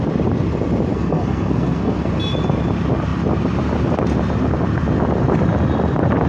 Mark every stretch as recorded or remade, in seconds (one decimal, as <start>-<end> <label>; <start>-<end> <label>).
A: 0.0-0.9 recorded; 0.9-2.1 remade; 2.1-6.3 recorded